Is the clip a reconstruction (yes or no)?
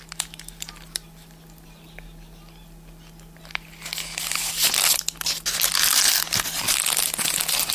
no